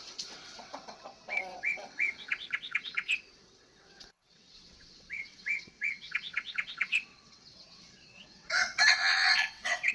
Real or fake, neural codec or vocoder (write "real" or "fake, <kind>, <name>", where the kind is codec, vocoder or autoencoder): fake, vocoder, WaveNeXt